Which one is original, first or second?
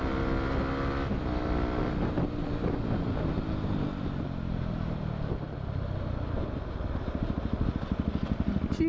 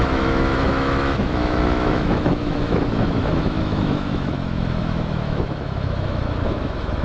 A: first